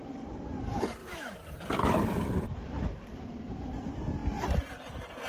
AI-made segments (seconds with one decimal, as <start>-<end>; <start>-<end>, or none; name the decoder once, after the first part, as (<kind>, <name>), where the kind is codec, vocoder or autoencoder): 0.0-4.2 (vocoder, BigVGAN v2)